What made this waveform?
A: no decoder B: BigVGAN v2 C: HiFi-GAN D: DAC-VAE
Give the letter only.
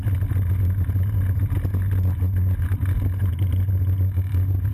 A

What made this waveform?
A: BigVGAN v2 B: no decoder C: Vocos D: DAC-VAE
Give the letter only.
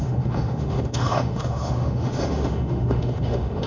D